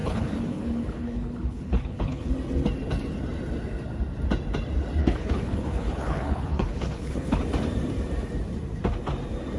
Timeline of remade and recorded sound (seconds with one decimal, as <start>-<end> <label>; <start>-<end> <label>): 0.0-2.3 remade; 2.3-5.0 recorded; 5.0-7.4 remade; 7.4-9.6 recorded